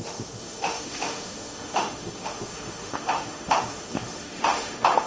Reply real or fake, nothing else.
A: fake